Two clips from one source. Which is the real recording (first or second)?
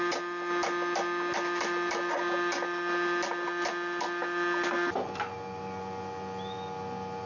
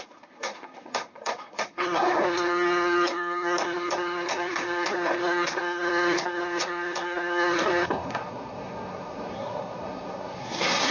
first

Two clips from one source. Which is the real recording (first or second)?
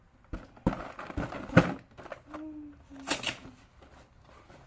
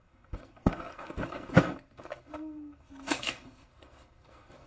first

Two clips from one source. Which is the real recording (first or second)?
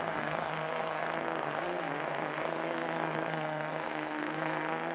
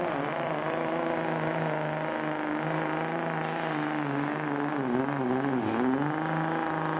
second